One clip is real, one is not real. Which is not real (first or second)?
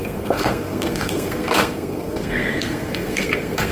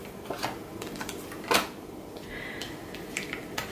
first